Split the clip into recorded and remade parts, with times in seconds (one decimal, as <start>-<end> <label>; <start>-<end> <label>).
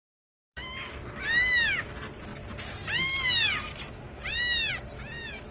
0.0-5.5 recorded